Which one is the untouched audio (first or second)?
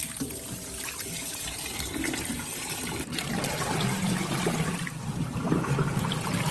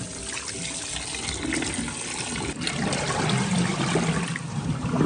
second